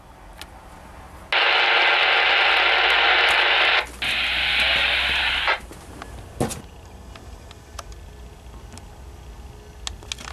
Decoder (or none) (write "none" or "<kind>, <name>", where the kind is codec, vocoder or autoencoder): none